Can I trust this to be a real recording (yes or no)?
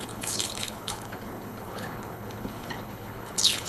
no